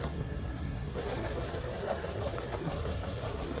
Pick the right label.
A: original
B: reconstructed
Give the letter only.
B